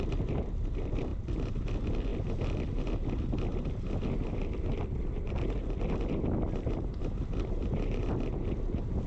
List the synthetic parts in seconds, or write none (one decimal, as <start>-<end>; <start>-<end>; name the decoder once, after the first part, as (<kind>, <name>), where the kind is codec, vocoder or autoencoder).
none